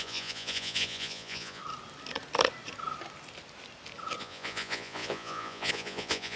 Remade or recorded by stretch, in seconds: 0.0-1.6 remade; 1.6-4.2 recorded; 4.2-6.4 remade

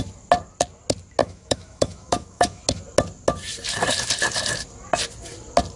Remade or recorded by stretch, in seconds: 0.0-1.2 recorded; 1.2-2.6 remade; 2.6-5.8 recorded

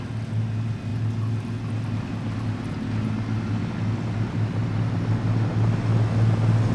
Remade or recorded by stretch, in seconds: 0.0-6.7 recorded

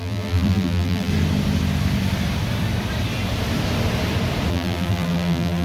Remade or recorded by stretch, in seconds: 0.0-1.1 remade; 1.1-4.5 recorded; 4.5-5.6 remade

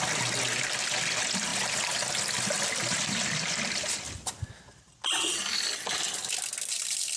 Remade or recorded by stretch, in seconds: 0.0-7.2 recorded